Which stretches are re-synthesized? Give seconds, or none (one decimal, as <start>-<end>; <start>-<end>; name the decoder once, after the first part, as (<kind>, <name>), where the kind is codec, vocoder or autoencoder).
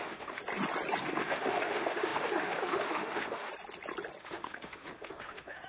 0.0-0.4 (autoencoder, DAC-VAE); 1.0-3.5; 4.2-5.7